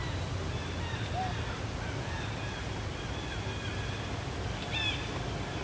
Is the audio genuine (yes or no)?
yes